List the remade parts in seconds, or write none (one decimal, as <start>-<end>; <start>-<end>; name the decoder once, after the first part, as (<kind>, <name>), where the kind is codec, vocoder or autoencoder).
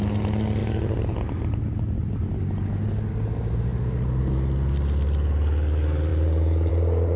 6.1-6.7 (vocoder, BigVGAN v2)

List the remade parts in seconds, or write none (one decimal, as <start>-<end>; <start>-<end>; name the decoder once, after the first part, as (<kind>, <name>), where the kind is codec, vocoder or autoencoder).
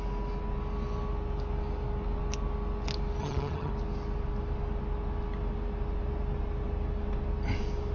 3.2-3.7 (vocoder, HiFi-GAN)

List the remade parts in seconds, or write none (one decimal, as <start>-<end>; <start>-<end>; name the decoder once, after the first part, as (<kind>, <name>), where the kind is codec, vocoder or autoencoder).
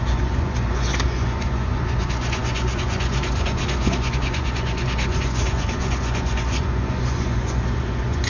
0.0-8.3 (vocoder, Vocos)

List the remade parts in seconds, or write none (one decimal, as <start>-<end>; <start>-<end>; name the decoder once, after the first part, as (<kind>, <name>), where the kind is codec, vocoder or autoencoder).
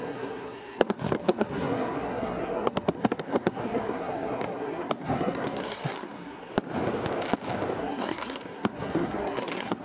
0.0-6.5 (codec, SNAC); 7.8-9.8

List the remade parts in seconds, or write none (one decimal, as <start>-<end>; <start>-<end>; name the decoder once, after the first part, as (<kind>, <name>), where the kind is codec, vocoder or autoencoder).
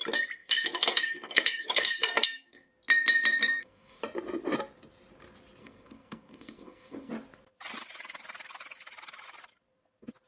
0.4-2.7 (codec, SNAC); 3.4-4.0; 5.6-7.1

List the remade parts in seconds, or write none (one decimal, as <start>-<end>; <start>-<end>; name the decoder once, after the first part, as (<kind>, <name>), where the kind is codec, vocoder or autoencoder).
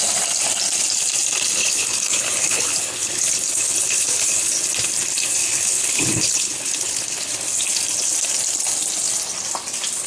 1.6-4.5 (codec, HILCodec); 5.4-7.3